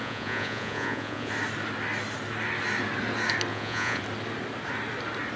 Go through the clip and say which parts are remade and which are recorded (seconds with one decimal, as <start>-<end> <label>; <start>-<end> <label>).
0.0-1.3 remade; 1.3-3.5 recorded; 3.5-4.0 remade; 4.0-5.4 recorded

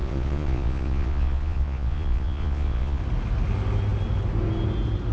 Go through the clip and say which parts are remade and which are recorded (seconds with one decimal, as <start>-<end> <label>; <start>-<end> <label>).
0.0-3.0 remade; 3.0-5.1 recorded

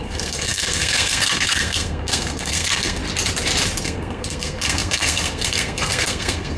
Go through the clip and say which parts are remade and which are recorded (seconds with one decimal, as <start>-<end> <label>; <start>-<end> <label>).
0.0-3.0 remade; 3.0-3.8 recorded; 3.8-6.6 remade